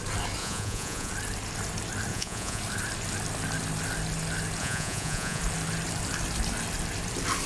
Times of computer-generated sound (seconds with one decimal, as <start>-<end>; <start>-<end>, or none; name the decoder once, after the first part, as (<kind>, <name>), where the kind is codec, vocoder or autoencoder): 0.4-1.1 (vocoder, Vocos); 2.1-2.6; 4.6-5.4